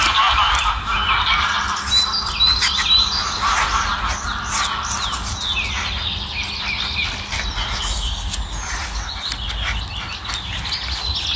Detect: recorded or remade recorded